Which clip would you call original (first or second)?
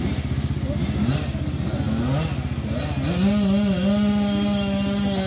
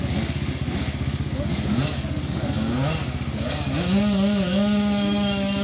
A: first